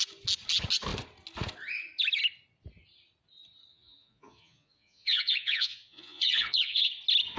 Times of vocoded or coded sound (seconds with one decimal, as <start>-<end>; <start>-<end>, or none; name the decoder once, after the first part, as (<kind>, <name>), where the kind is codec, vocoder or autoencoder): 3.7-6.9 (vocoder, Vocos)